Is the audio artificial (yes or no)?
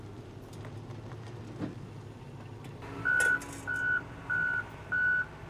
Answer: no